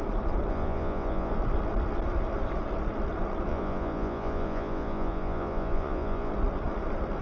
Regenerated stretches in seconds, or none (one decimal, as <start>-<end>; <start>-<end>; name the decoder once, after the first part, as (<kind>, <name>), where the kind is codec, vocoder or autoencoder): 0.5-1.3 (vocoder, Vocos); 3.5-6.3